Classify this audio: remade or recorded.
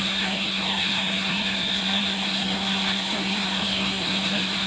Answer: remade